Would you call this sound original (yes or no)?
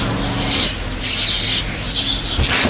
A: yes